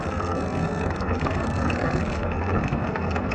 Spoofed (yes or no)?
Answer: yes